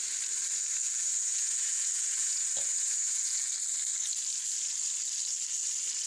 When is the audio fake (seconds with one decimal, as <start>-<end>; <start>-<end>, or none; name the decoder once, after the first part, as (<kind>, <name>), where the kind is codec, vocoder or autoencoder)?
0.8-3.5 (vocoder, Vocos)